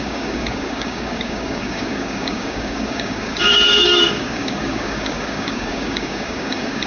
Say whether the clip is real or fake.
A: fake